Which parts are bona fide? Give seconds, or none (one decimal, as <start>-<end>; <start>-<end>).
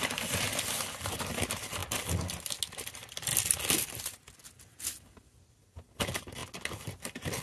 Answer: 0.0-7.4